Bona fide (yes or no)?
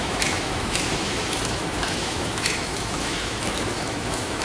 no